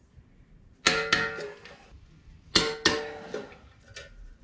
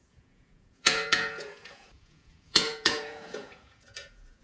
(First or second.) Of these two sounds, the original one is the first